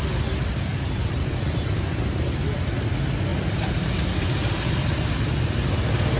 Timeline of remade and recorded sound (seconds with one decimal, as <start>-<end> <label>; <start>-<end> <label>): 0.0-0.7 recorded; 0.7-1.7 remade; 1.7-3.3 recorded; 3.3-3.8 remade; 3.8-6.2 recorded